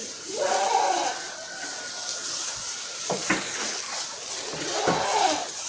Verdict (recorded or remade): recorded